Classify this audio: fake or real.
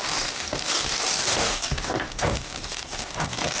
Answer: fake